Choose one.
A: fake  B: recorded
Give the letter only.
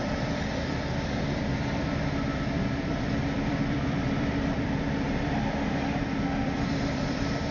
A